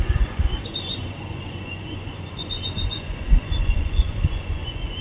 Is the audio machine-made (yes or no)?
yes